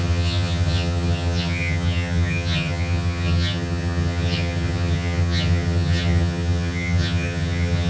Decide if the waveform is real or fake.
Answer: fake